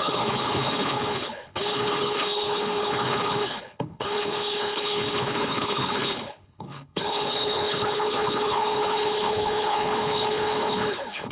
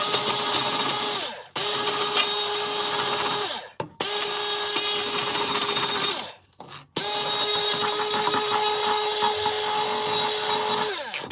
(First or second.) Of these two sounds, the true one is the second